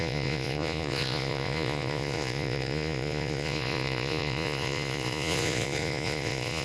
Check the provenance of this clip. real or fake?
fake